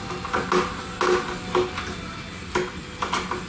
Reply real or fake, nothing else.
real